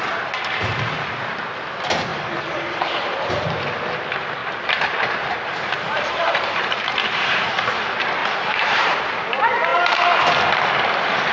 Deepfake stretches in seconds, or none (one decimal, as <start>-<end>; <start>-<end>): 2.1-3.3; 4.4-7.5; 8.2-9.0